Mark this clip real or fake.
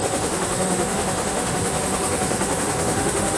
fake